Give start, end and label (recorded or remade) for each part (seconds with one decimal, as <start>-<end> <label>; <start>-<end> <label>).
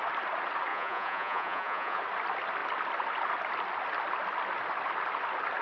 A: 0.0-0.7 recorded; 0.7-2.0 remade; 2.0-5.6 recorded